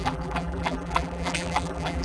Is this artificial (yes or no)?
yes